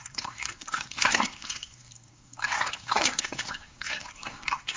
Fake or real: fake